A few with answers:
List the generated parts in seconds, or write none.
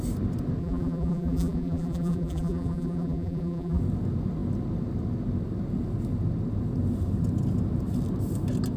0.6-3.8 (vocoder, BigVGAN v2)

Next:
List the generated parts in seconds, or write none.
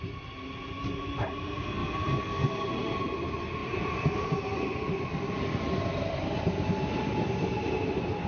1.8-2.5 (vocoder, BigVGAN v2); 3.6-8.3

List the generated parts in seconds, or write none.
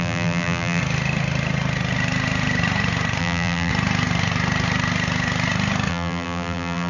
0.0-0.8 (vocoder, BigVGAN v2); 3.2-3.7; 5.9-6.9